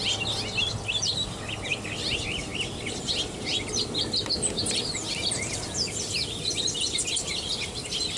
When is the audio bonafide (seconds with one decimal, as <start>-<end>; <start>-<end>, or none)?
0.0-8.2